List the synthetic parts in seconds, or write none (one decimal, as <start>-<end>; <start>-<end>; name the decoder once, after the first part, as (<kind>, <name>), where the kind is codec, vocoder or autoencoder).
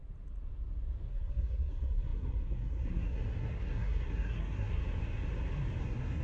1.1-4.8 (codec, SNAC); 5.8-6.2